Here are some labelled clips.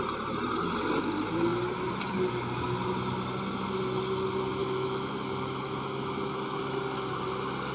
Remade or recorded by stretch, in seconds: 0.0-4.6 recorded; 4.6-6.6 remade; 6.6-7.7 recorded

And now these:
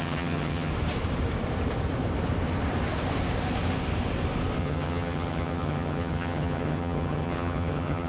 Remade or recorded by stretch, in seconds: 0.0-0.7 remade; 0.7-4.6 recorded; 4.6-8.1 remade

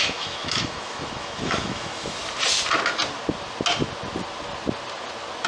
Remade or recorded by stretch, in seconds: 0.0-2.2 remade; 2.2-5.5 recorded

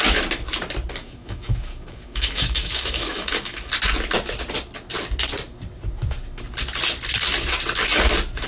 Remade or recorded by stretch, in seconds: 0.0-1.0 recorded; 1.0-3.7 remade; 3.7-8.5 recorded

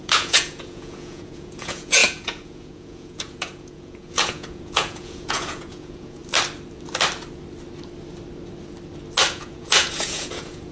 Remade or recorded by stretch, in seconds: 0.0-6.2 remade; 6.2-9.3 recorded; 9.3-10.7 remade

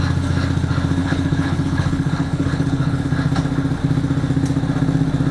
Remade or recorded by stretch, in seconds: 0.0-1.0 recorded; 1.0-3.0 remade; 3.0-5.3 recorded